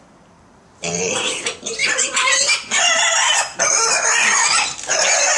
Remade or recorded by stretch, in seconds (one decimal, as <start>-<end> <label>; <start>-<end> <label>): 0.0-1.8 remade; 1.8-2.8 recorded; 2.8-5.4 remade